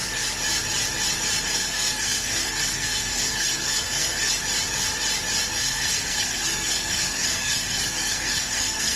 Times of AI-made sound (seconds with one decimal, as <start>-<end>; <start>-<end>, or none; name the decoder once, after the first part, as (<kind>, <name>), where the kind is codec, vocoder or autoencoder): 1.4-4.3 (codec, SNAC); 5.6-9.0